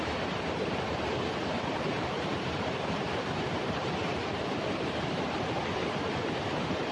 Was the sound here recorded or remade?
remade